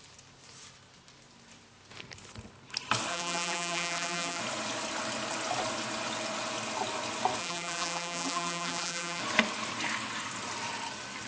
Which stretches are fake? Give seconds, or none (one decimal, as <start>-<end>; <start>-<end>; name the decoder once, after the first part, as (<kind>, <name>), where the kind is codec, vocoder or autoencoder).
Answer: 3.1-4.4 (vocoder, BigVGAN v2); 7.4-9.2